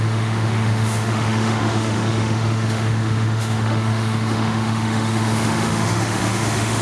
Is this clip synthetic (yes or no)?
yes